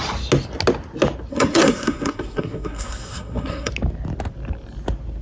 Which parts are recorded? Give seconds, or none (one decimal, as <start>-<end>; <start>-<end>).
0.0-1.3; 3.7-5.2